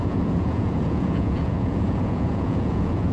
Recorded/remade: remade